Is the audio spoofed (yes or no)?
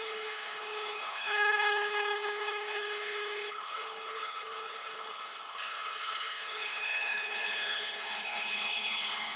yes